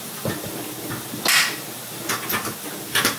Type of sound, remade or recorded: recorded